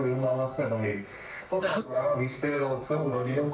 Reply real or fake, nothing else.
fake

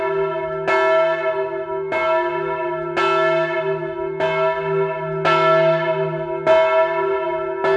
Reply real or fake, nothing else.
real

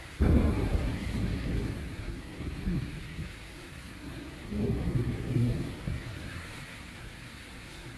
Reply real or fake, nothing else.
fake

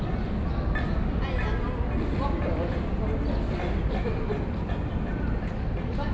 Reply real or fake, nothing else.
real